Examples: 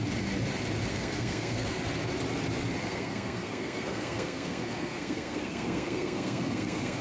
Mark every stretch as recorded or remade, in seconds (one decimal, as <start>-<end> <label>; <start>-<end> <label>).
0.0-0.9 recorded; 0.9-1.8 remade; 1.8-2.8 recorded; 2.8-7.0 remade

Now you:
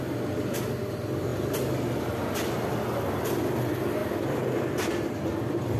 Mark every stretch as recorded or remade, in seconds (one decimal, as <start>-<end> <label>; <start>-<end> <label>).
0.0-5.8 recorded

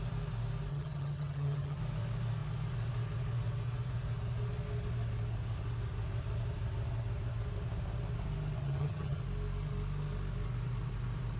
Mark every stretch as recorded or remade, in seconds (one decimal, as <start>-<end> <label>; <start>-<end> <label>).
0.0-0.7 recorded; 0.7-1.8 remade; 1.8-8.6 recorded; 8.6-9.2 remade; 9.2-11.4 recorded

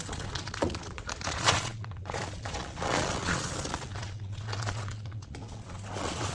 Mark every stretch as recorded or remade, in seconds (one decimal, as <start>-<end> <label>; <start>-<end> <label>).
0.0-6.3 remade

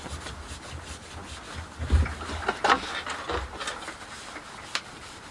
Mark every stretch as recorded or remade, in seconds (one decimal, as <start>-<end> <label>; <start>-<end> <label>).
0.0-5.3 recorded

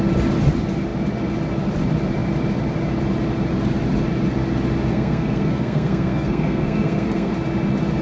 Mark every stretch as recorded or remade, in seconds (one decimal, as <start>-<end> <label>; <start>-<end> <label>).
0.0-4.9 recorded; 4.9-7.3 remade; 7.3-8.0 recorded